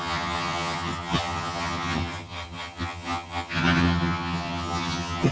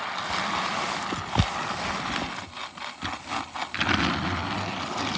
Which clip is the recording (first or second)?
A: second